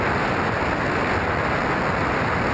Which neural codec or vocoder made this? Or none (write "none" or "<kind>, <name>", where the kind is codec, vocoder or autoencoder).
none